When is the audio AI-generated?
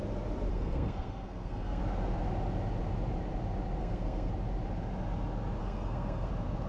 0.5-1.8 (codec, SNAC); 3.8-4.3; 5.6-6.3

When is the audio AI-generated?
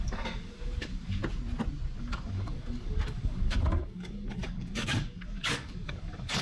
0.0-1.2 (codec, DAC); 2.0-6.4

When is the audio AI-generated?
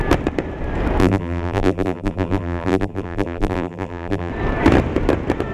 1.0-4.3 (vocoder, BigVGAN v2)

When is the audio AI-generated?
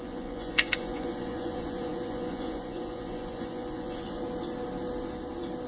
0.0-4.2 (vocoder, Vocos)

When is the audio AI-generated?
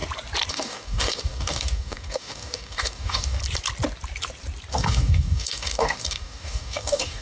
0.5-3.4 (codec, DAC); 4.7-7.2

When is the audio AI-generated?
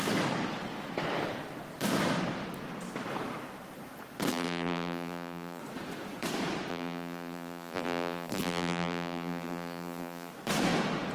4.3-5.6 (vocoder, BigVGAN v2); 6.7-10.3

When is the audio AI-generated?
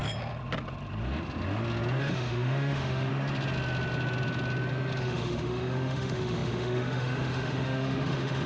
2.0-3.1 (autoencoder, DAC-VAE); 5.0-8.5